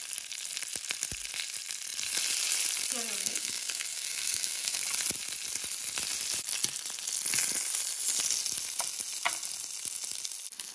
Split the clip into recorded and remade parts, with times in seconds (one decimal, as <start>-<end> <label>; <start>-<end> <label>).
0.0-3.2 recorded; 3.2-4.8 remade; 4.8-10.7 recorded